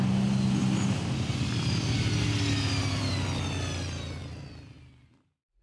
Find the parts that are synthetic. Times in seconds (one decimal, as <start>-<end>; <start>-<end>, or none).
none

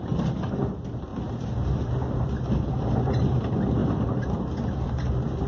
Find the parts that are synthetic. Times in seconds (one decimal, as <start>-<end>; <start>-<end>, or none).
none

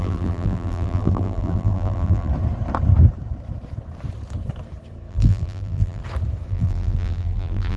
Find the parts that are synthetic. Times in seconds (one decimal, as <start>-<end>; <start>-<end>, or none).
0.0-2.3; 5.1-6.0; 6.5-7.8